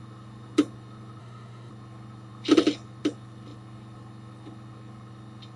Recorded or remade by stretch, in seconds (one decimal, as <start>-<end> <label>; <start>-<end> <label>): 0.0-1.2 recorded; 1.2-1.7 remade; 1.7-5.6 recorded